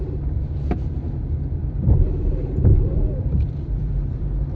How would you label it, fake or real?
fake